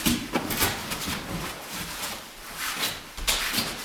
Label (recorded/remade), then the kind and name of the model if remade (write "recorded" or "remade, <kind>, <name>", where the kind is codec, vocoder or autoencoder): recorded